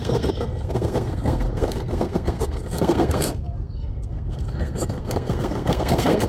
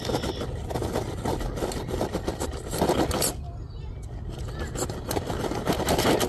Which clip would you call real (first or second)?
second